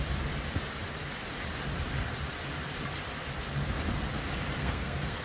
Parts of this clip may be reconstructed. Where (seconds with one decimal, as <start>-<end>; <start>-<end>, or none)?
4.6-5.2